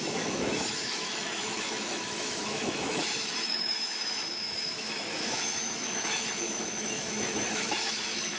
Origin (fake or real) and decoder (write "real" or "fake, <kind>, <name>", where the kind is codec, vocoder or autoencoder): fake, autoencoder, DAC-VAE